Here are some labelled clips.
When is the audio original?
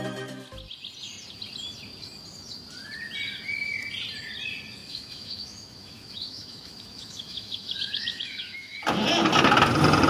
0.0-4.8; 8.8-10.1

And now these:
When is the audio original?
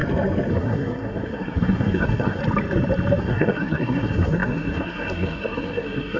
0.0-0.5; 2.4-3.2